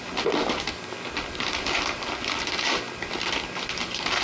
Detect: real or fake real